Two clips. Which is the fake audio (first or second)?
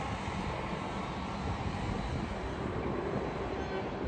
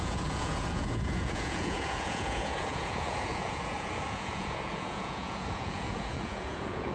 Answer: second